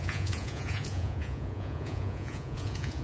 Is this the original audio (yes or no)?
no